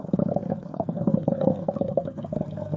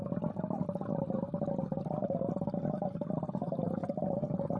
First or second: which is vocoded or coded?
first